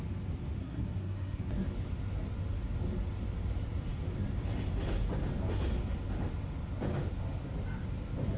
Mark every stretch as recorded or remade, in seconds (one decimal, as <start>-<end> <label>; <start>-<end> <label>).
0.0-0.6 recorded; 0.6-1.4 remade; 1.4-8.4 recorded